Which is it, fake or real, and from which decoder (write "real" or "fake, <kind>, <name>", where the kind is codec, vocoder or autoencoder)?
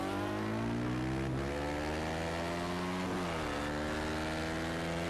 real